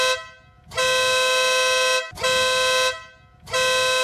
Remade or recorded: recorded